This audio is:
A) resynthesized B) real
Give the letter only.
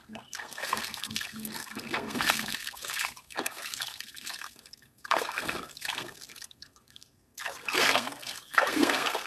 A